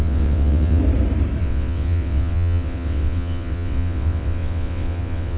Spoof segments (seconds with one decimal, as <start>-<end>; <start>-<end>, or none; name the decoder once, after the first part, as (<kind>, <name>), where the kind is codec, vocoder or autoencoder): 0.0-0.8 (vocoder, WaveNeXt); 1.4-5.4